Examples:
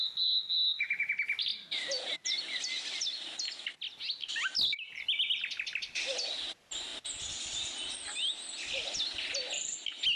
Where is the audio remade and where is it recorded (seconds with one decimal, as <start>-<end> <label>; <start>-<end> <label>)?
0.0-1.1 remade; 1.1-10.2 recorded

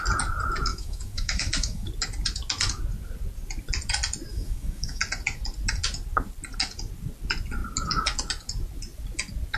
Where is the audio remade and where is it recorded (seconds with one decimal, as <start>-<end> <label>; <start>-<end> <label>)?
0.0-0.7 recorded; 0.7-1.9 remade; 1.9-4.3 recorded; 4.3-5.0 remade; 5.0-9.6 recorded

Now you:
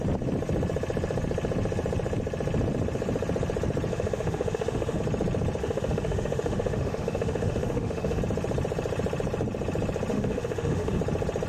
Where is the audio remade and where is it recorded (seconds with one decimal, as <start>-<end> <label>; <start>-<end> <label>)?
0.0-3.9 recorded; 3.9-5.0 remade; 5.0-5.6 recorded; 5.6-8.2 remade; 8.2-10.1 recorded; 10.1-11.0 remade; 11.0-11.5 recorded

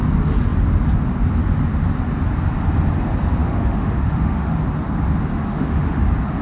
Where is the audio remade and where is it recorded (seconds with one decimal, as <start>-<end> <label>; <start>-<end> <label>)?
0.0-3.4 recorded; 3.4-4.5 remade; 4.5-5.3 recorded; 5.3-6.0 remade; 6.0-6.4 recorded

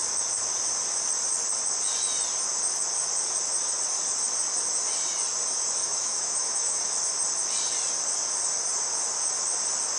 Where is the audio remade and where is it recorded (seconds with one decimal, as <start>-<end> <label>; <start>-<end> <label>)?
0.0-5.8 recorded; 5.8-6.9 remade; 6.9-10.0 recorded

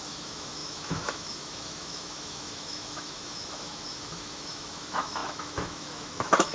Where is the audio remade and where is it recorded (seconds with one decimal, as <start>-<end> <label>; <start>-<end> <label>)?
0.0-6.5 remade

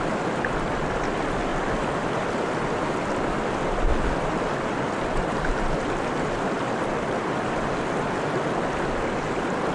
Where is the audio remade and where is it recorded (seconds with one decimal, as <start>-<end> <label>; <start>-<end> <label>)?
0.0-9.7 recorded

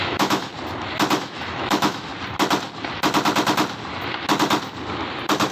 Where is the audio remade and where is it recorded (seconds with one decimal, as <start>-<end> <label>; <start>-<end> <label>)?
0.0-0.5 remade; 0.5-1.2 recorded; 1.2-2.1 remade; 2.1-5.5 recorded